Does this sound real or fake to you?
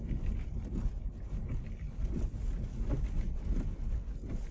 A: real